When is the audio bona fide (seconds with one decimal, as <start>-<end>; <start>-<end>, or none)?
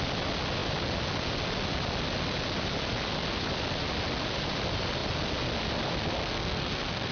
0.0-6.2